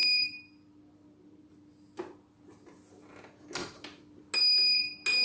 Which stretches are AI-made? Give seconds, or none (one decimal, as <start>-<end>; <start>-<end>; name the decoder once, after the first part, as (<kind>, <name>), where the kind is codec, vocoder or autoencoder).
none